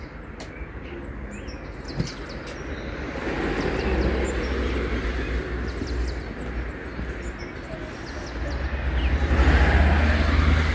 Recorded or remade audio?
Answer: recorded